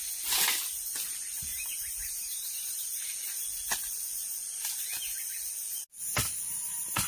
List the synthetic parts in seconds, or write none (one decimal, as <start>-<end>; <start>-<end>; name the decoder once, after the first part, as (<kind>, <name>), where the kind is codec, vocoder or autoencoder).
1.5-2.8 (vocoder, BigVGAN v2)